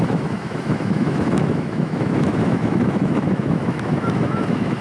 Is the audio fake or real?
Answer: fake